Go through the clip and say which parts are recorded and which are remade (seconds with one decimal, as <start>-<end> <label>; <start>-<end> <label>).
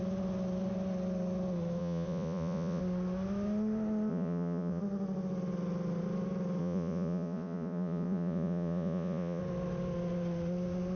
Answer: 0.0-1.8 recorded; 1.8-2.8 remade; 2.8-4.1 recorded; 4.1-4.8 remade; 4.8-6.6 recorded; 6.6-9.4 remade; 9.4-11.0 recorded